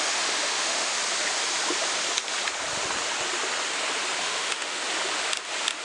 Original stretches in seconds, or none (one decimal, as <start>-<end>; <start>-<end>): 0.9-4.2; 4.8-5.8